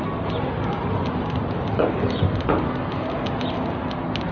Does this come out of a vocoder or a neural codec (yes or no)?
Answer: no